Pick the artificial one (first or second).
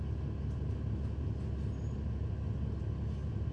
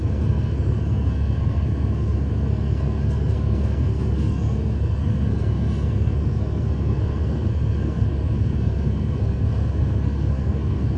second